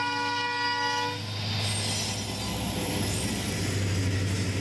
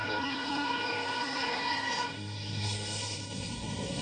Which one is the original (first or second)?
first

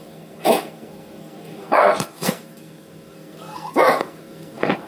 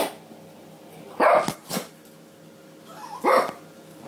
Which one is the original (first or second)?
second